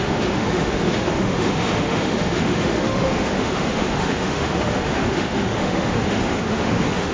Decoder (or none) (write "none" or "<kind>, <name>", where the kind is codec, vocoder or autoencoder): autoencoder, DAC-VAE